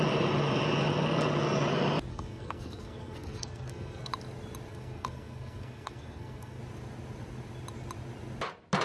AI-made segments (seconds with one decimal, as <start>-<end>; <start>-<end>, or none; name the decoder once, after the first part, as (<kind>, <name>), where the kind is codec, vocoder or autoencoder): 2.1-4.1 (codec, SNAC); 4.7-6.6